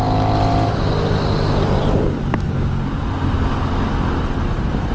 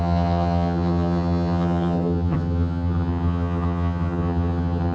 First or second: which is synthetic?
second